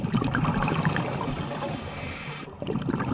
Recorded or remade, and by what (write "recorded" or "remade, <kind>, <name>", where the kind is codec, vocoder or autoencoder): recorded